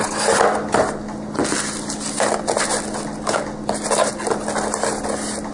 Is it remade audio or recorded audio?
recorded